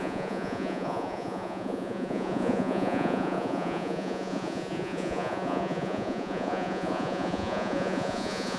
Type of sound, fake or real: fake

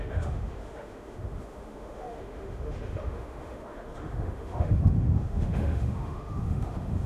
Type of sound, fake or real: fake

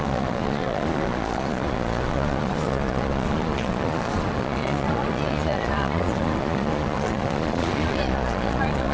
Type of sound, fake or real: fake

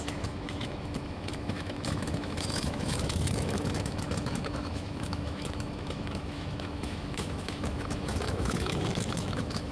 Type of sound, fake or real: fake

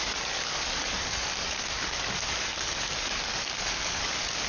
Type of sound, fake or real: fake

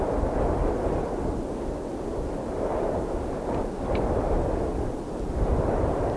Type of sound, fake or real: real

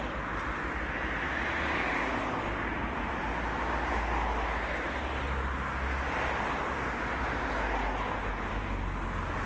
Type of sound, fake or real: real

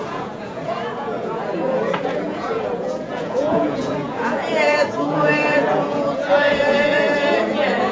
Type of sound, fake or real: fake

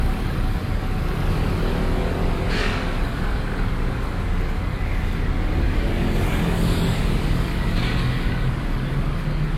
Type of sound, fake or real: fake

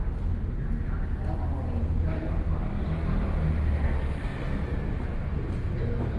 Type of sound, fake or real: real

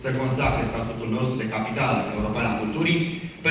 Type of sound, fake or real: real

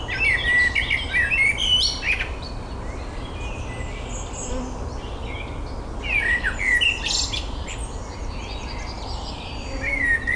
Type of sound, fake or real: real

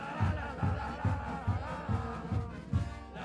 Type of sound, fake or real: real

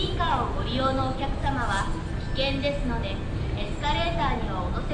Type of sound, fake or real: real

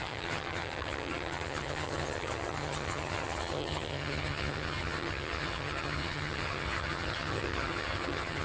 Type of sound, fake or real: fake